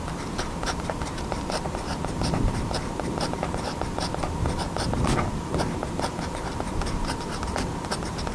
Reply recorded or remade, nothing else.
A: remade